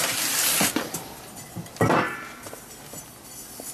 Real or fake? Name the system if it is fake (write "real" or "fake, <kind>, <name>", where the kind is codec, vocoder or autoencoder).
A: real